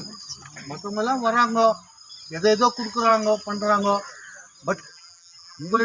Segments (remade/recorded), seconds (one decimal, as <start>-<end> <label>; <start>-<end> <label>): 0.0-4.9 recorded; 4.9-5.8 remade